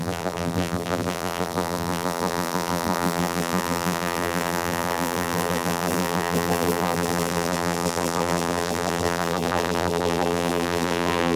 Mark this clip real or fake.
fake